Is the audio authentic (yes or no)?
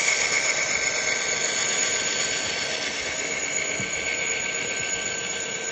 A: yes